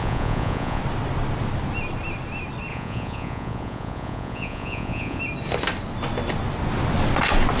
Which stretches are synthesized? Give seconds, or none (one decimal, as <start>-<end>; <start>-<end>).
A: 0.0-0.8; 2.7-5.2